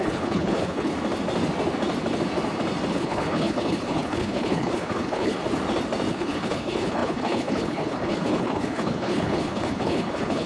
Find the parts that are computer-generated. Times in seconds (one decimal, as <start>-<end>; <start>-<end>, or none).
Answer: 0.0-0.9; 2.9-5.4; 6.1-10.5